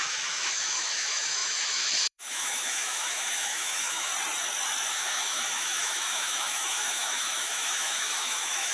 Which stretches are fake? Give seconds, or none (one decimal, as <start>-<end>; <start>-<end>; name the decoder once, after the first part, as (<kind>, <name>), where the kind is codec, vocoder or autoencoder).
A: 0.0-4.1 (autoencoder, DAC-VAE); 4.9-8.7